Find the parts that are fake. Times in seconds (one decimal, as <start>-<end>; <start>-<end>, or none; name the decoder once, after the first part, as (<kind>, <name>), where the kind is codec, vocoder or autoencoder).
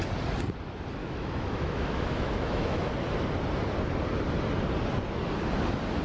1.0-2.9 (autoencoder, DAC-VAE)